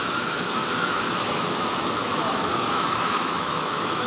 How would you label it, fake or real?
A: fake